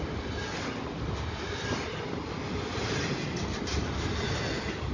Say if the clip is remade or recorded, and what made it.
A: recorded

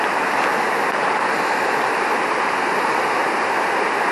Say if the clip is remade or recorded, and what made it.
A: recorded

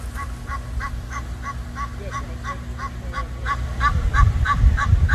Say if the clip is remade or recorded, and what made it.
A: recorded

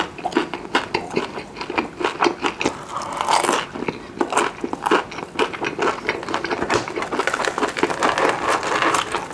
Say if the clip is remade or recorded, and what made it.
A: recorded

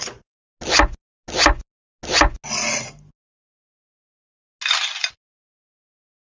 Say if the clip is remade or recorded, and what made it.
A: recorded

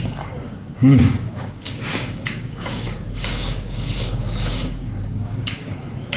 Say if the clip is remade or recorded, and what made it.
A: remade, codec, DAC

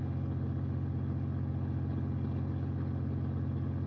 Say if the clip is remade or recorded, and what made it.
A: recorded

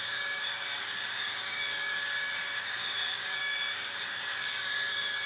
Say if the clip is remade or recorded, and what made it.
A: remade, codec, DAC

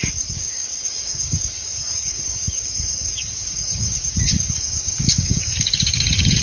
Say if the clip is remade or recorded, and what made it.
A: remade, codec, DAC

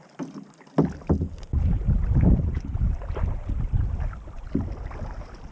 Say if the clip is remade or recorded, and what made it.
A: recorded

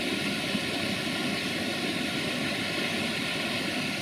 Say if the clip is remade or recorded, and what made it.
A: recorded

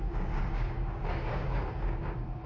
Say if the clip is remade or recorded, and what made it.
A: remade, codec, DAC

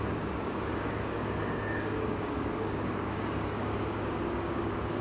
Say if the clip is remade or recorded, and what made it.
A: remade, codec, DAC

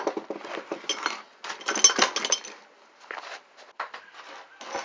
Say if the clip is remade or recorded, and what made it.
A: recorded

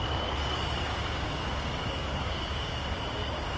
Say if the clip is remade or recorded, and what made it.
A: remade, codec, DAC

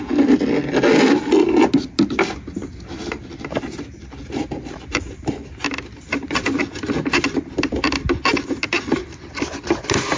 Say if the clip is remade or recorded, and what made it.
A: recorded